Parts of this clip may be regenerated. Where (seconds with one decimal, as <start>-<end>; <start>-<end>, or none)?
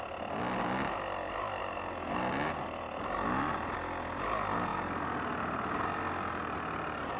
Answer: none